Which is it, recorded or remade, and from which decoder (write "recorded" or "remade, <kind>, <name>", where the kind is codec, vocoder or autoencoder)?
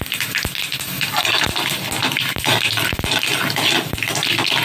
recorded